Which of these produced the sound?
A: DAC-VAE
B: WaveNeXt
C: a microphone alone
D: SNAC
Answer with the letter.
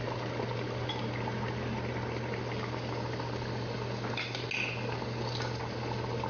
C